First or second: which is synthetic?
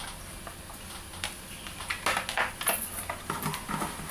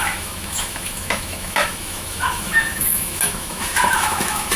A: second